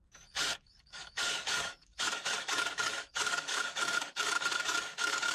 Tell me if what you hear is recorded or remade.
remade